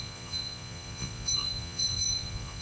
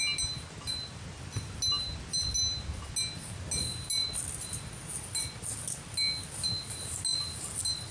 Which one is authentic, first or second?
second